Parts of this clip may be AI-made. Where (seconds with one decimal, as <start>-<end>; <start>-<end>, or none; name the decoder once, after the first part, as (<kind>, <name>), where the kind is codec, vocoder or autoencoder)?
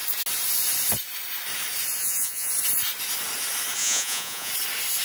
2.0-2.5 (vocoder, Vocos); 3.8-4.5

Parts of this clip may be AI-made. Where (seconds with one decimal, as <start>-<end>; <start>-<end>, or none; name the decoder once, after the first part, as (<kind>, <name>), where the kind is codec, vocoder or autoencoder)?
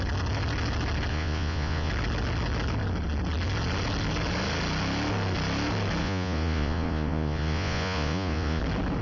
1.1-1.9 (vocoder, Vocos); 6.0-8.6